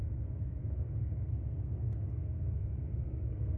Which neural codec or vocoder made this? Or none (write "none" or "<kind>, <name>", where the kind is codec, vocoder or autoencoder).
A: codec, SNAC